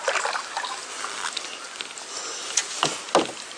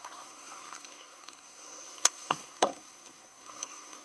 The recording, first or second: first